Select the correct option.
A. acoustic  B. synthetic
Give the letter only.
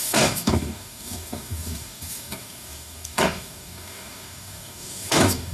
B